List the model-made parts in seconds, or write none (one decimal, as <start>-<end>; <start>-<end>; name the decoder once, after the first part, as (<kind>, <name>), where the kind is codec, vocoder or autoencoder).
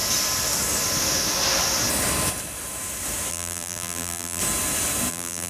3.3-4.4 (vocoder, BigVGAN v2); 5.1-5.5